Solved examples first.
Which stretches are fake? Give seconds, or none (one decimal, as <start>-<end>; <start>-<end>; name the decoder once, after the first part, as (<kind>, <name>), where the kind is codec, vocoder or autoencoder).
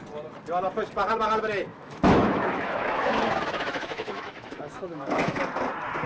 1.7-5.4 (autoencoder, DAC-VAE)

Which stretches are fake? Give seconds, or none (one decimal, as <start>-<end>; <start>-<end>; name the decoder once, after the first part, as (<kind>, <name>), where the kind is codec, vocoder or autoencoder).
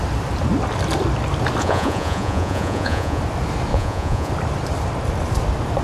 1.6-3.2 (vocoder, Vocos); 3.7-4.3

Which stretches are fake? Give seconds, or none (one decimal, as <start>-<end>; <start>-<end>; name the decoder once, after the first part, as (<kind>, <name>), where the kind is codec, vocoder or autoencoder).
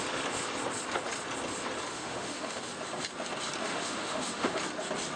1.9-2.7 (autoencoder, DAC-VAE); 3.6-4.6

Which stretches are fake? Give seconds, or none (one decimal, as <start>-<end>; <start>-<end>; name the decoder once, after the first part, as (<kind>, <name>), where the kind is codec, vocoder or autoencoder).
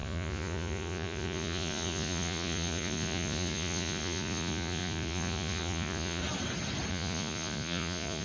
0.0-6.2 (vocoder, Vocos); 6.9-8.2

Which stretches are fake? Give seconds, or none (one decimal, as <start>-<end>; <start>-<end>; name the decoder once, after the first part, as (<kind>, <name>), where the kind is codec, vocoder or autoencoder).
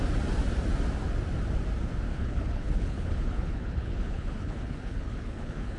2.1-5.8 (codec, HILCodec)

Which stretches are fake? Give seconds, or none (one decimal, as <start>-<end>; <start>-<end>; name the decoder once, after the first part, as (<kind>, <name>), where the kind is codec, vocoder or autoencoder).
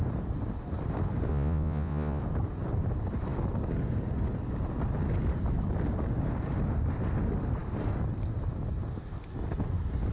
1.3-2.2 (vocoder, Vocos)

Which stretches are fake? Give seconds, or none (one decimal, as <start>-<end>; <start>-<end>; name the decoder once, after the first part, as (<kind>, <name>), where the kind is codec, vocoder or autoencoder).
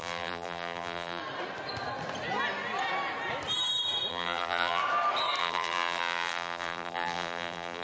0.0-1.2 (vocoder, BigVGAN v2); 4.1-4.8; 5.4-7.8